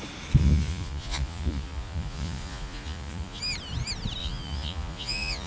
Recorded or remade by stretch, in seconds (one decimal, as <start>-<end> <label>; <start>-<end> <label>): 0.0-0.4 recorded; 0.4-3.4 remade; 3.4-4.2 recorded; 4.2-5.5 remade